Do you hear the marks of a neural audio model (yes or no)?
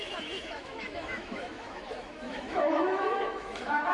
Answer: yes